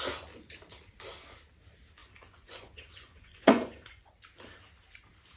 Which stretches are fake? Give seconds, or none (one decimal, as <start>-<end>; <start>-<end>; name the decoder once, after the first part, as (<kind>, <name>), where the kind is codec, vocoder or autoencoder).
2.0-4.1 (vocoder, Vocos)